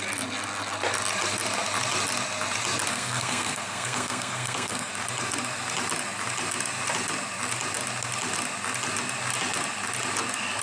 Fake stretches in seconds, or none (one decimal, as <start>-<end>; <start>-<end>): 2.9-4.9